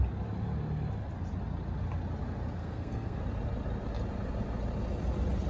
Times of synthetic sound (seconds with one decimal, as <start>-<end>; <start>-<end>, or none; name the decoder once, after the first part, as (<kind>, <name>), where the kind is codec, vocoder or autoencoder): 2.6-3.2 (codec, SNAC)